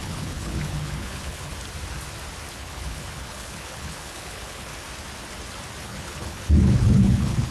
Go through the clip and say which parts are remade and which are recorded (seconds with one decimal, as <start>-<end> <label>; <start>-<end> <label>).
0.0-1.5 remade; 1.5-2.5 recorded; 2.5-4.7 remade; 4.7-5.8 recorded; 5.8-7.5 remade